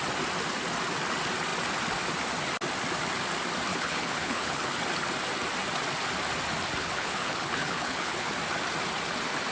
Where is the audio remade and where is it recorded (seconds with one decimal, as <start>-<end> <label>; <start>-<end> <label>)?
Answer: 0.0-3.7 recorded; 3.7-4.8 remade; 4.8-6.8 recorded; 6.8-8.3 remade; 8.3-9.5 recorded